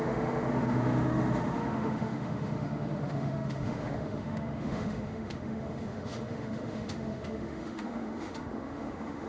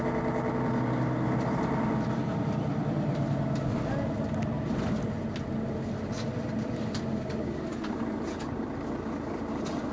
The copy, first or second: first